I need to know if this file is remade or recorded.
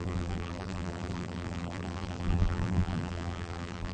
remade